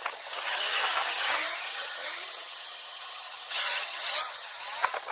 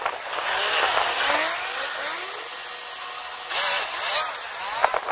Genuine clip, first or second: second